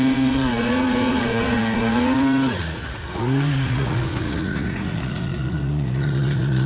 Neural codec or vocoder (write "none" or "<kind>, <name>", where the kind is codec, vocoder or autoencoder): vocoder, Vocos